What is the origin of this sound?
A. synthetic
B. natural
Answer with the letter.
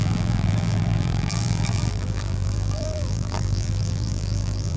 A